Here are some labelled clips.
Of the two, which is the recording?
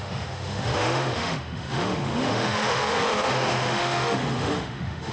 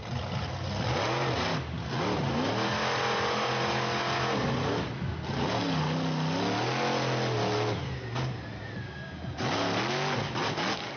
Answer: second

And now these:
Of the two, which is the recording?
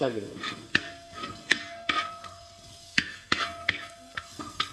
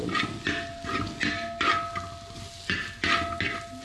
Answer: second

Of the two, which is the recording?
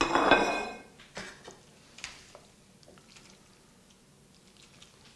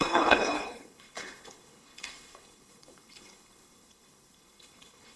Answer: first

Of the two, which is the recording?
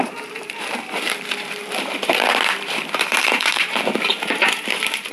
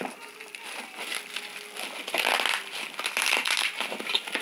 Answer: second